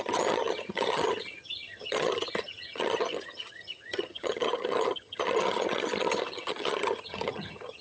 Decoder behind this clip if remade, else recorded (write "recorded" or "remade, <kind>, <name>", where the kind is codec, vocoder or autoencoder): remade, vocoder, HiFi-GAN